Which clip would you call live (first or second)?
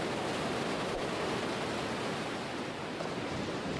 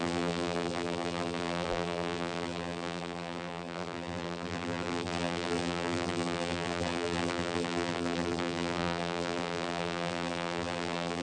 first